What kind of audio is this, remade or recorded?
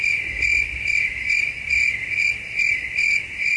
recorded